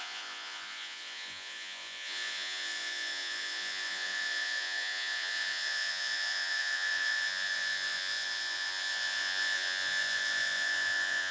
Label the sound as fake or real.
fake